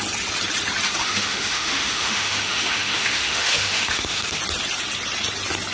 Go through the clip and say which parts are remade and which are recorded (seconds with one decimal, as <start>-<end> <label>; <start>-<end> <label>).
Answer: 0.0-1.0 recorded; 1.0-4.4 remade; 4.4-5.7 recorded

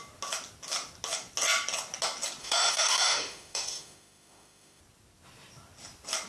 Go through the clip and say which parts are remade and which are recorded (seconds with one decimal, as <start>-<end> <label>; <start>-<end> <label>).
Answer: 0.0-2.4 recorded; 2.4-4.8 remade; 4.8-6.3 recorded

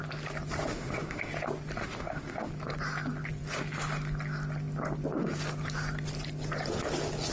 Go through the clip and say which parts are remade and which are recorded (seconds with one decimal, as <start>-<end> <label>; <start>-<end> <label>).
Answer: 0.0-0.7 recorded; 0.7-1.3 remade; 1.3-1.8 recorded; 1.8-2.5 remade; 2.5-7.3 recorded

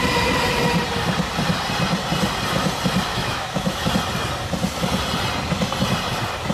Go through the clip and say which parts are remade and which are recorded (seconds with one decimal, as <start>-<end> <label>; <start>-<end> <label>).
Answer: 0.0-3.1 recorded; 3.1-3.9 remade; 3.9-6.5 recorded